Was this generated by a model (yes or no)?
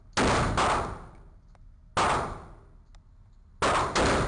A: no